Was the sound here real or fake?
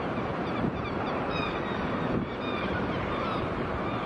fake